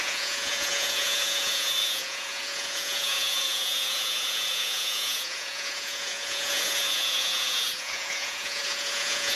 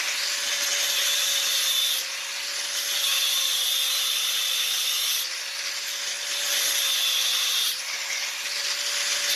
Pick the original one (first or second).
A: second